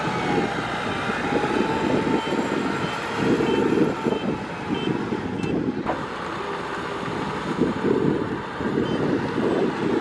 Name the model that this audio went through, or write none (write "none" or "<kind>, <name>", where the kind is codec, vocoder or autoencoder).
none